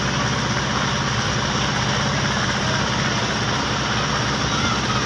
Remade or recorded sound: recorded